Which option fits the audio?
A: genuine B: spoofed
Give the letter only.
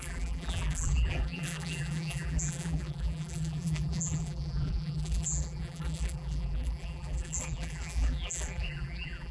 B